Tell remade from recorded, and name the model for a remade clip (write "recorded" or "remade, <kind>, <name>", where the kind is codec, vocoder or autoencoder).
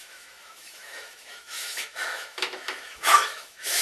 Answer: remade, autoencoder, DAC-VAE